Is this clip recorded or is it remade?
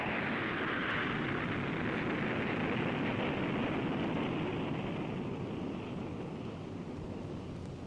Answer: recorded